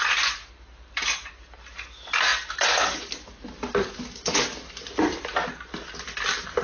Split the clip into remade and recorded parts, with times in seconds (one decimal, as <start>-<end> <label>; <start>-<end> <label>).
0.0-0.4 recorded; 0.4-1.3 remade; 1.3-6.6 recorded